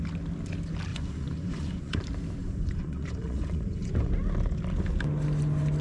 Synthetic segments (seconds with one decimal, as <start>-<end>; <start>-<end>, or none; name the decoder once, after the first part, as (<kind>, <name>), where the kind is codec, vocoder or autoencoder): 0.9-2.0 (vocoder, Vocos); 2.4-4.1